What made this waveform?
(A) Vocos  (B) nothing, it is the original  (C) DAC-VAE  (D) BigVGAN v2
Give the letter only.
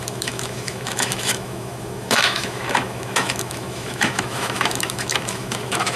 C